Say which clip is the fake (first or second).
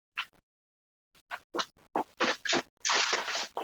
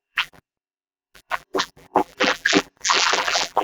second